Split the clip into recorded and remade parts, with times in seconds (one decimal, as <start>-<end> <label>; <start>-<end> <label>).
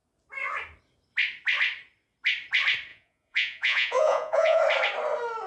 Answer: 0.0-2.9 recorded; 2.9-4.6 remade; 4.6-5.5 recorded